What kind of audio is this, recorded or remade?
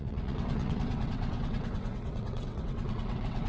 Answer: remade